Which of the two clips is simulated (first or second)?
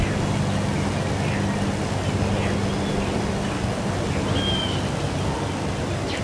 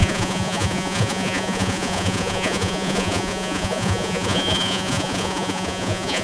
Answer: second